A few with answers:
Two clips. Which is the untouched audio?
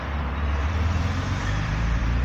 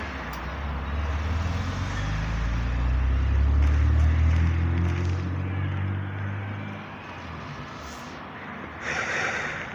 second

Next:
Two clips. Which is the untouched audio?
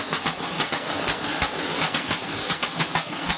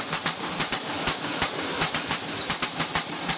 second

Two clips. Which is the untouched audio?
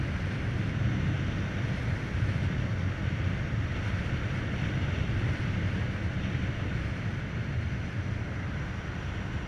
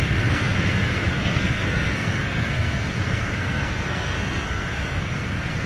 first